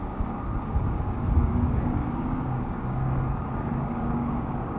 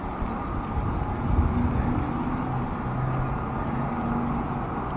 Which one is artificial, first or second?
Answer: first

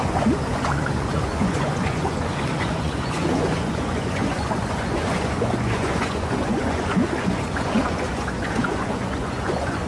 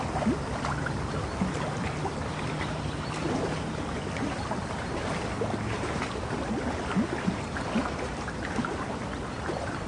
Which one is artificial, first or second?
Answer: first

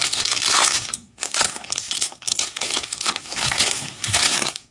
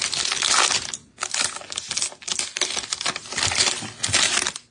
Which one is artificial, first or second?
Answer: first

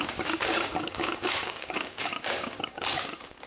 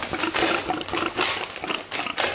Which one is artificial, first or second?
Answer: first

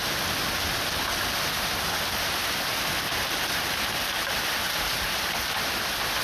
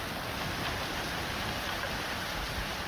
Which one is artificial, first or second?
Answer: second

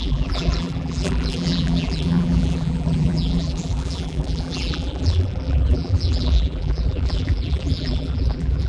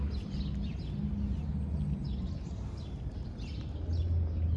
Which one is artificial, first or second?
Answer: first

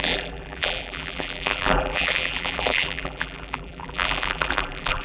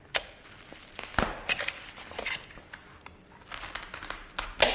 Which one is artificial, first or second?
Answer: first